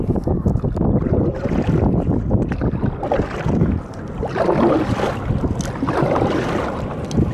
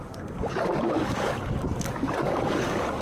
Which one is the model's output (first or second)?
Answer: second